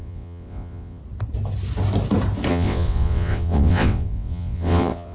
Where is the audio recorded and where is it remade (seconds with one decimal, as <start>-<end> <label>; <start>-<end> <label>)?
0.0-1.0 remade; 1.0-2.5 recorded; 2.5-5.1 remade